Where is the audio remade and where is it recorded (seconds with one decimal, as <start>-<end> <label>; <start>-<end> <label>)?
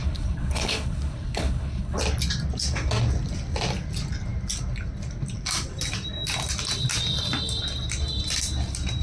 0.0-2.0 remade; 2.0-9.0 recorded